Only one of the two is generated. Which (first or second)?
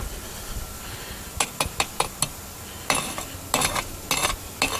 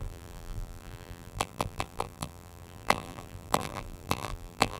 second